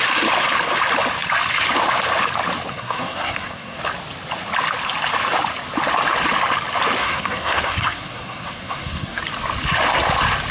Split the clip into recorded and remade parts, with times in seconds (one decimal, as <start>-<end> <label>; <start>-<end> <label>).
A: 0.0-2.7 recorded; 2.7-3.8 remade; 3.8-7.0 recorded; 7.0-9.2 remade; 9.2-10.5 recorded